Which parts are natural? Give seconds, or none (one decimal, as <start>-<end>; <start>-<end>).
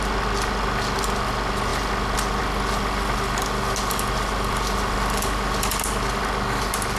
0.0-7.0